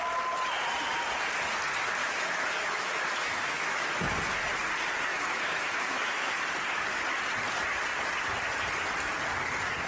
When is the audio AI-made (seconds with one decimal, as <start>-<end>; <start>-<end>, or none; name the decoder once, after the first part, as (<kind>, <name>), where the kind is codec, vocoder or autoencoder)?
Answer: 2.0-4.1 (autoencoder, DAC-VAE); 5.1-6.3